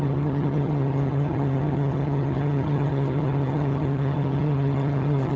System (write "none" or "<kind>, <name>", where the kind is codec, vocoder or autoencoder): vocoder, HiFi-GAN